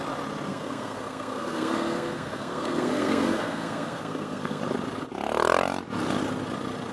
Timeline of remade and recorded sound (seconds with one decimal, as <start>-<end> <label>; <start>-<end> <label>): 0.0-0.5 recorded; 0.5-4.6 remade; 4.6-6.9 recorded